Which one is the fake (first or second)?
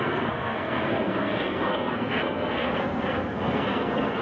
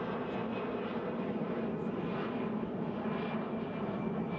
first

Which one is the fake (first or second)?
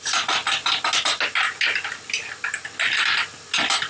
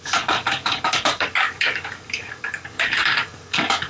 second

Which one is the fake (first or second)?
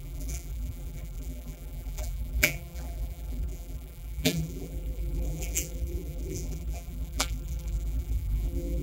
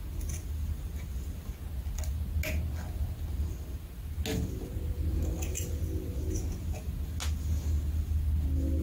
first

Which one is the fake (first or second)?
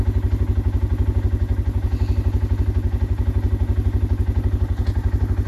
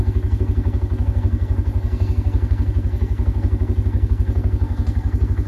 second